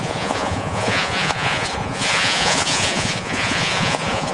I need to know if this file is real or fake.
fake